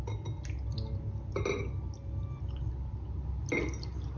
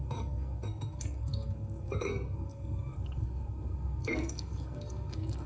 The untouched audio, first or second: first